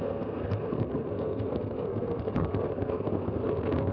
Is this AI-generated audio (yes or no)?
yes